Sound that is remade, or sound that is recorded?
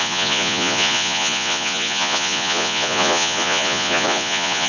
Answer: remade